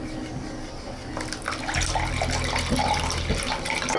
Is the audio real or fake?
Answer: real